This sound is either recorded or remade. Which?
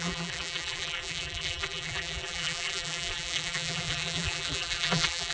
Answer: remade